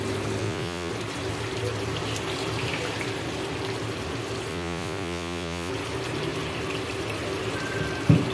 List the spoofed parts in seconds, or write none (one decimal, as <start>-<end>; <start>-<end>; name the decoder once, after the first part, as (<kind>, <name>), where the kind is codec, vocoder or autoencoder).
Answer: 0.4-0.9 (vocoder, Vocos); 4.5-5.7